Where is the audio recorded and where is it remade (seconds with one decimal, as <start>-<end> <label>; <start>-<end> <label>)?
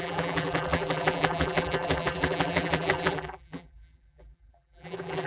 0.0-5.3 remade